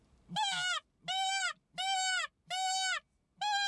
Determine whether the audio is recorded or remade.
recorded